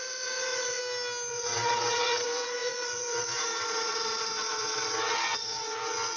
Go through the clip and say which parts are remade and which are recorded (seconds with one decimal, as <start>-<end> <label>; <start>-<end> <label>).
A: 0.0-0.8 remade; 0.8-1.3 recorded; 1.3-6.2 remade